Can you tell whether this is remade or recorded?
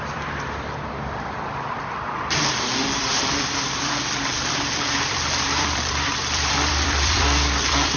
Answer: remade